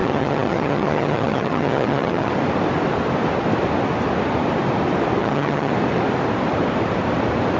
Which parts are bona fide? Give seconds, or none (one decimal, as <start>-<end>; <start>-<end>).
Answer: 2.3-5.2; 5.7-7.6